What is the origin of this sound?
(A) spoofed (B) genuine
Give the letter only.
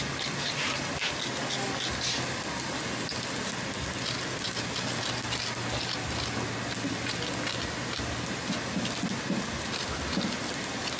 B